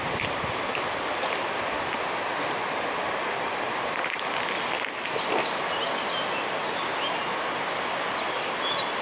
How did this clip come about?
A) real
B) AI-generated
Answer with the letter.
A